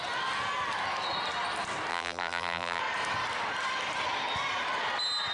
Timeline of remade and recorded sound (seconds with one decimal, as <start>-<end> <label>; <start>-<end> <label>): 0.0-1.9 recorded; 1.9-2.8 remade; 2.8-5.3 recorded